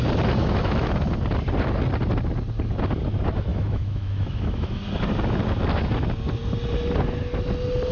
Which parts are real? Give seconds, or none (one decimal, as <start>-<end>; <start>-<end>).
0.0-0.4; 1.1-3.5; 4.8-7.9